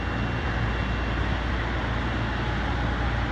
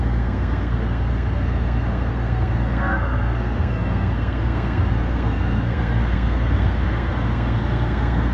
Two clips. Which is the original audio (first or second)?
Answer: first